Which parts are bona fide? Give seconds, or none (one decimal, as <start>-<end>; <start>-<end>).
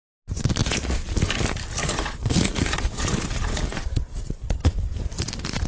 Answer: 0.0-0.6; 1.3-1.8; 4.8-5.7